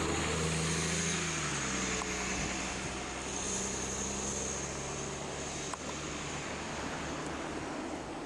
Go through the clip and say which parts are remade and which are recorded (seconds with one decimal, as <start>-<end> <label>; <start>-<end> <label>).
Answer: 0.0-8.3 recorded